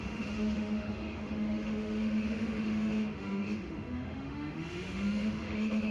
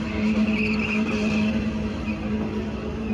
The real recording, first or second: second